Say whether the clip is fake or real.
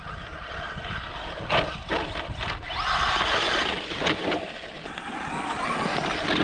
real